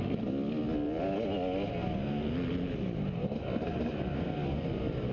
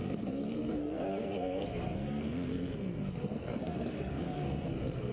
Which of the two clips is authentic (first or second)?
first